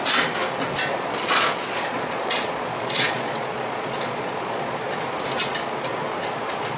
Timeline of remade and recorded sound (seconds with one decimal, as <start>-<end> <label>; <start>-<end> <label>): 0.0-0.9 recorded; 0.9-5.0 remade; 5.0-5.9 recorded; 5.9-6.8 remade